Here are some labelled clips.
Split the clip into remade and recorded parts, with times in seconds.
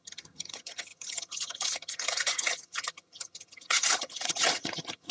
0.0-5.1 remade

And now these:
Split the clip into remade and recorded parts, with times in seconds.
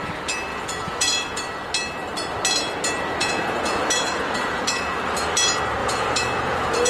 0.0-0.5 recorded; 0.5-1.5 remade; 1.5-3.2 recorded; 3.2-5.0 remade; 5.0-5.8 recorded; 5.8-6.9 remade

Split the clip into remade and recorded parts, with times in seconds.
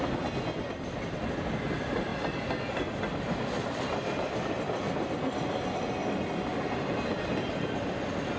0.0-8.4 recorded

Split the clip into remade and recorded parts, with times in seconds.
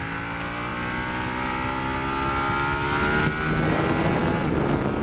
0.0-5.0 recorded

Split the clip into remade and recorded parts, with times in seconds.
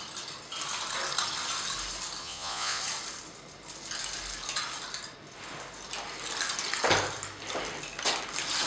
0.0-2.2 recorded; 2.2-2.8 remade; 2.8-8.7 recorded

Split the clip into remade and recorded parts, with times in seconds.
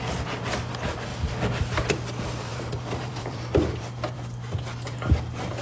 0.0-2.5 recorded; 2.5-4.2 remade; 4.2-5.6 recorded